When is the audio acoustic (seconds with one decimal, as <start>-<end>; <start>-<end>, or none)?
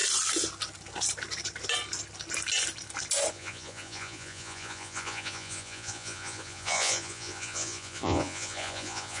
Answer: 0.0-3.3